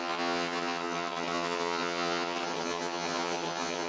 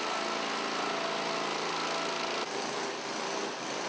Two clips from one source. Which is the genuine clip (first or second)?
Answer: second